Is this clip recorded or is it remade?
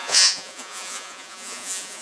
remade